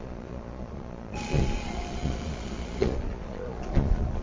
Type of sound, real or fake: fake